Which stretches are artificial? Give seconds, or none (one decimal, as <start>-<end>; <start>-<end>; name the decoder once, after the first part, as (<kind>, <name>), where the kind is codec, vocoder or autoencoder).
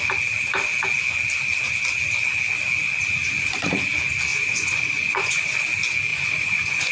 2.9-3.9 (vocoder, Vocos); 4.3-5.6; 6.1-6.9